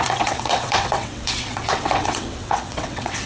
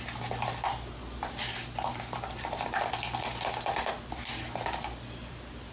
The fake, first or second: first